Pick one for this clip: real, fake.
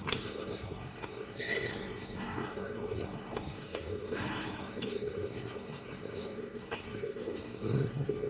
fake